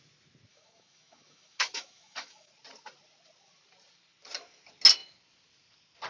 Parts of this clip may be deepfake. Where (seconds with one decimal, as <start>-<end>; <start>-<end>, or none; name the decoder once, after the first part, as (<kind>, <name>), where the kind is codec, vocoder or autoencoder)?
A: 0.5-2.5 (autoencoder, DAC-VAE)